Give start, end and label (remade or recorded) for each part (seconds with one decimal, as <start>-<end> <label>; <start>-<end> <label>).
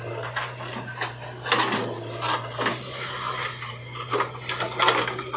0.0-5.4 recorded